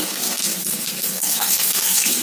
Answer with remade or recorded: remade